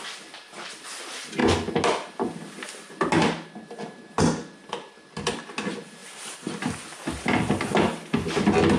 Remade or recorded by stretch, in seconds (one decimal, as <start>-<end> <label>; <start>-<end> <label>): 0.0-8.8 recorded